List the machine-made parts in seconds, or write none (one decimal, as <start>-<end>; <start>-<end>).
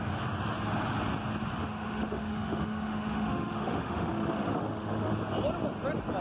1.6-5.1